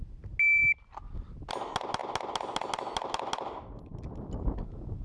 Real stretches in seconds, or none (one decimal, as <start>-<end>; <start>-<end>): 0.0-5.0